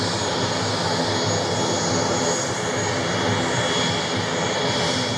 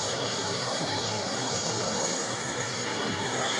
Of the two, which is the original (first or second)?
first